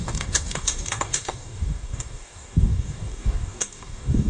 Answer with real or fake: fake